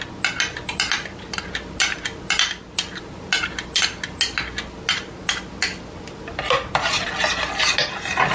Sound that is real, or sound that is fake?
real